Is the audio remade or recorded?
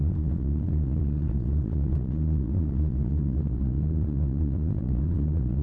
remade